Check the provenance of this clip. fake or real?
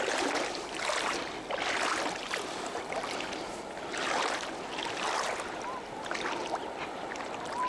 real